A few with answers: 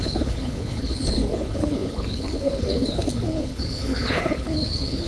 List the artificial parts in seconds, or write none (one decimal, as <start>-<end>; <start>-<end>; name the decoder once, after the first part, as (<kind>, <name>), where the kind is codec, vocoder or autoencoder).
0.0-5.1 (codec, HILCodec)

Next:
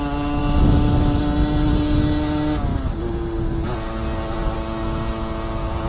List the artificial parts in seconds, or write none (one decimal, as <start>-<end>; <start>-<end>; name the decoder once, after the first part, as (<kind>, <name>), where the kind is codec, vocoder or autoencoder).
0.4-1.2 (autoencoder, DAC-VAE)

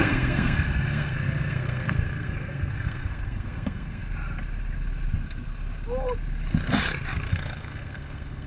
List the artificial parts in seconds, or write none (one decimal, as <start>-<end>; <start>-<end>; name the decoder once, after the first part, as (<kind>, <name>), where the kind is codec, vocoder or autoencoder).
0.0-4.0 (codec, SNAC); 7.3-8.5

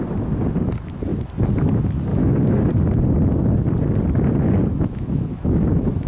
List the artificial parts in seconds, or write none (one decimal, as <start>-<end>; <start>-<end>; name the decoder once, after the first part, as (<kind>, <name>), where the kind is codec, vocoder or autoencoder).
2.1-2.7 (autoencoder, DAC-VAE); 4.7-6.1